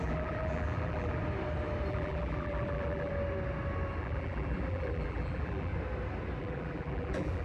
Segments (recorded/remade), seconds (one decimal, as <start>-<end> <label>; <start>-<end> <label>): 0.0-1.2 remade; 1.2-1.9 recorded; 1.9-3.1 remade; 3.1-4.0 recorded; 4.0-5.7 remade; 5.7-6.4 recorded; 6.4-7.4 remade